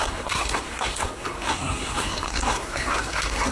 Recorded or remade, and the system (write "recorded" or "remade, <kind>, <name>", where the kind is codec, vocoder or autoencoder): remade, codec, SNAC